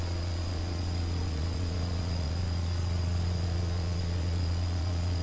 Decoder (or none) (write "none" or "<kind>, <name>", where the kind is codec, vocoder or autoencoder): vocoder, Vocos